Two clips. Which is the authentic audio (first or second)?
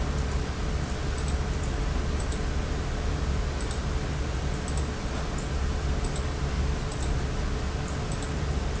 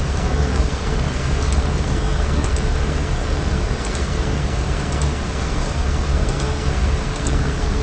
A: first